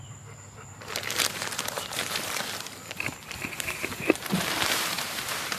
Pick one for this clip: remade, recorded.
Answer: remade